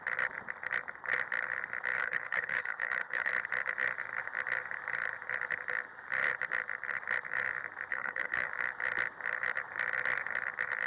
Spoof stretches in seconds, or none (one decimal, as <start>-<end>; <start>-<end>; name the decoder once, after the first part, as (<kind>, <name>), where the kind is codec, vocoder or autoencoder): 2.0-3.3 (codec, HILCodec); 7.9-8.5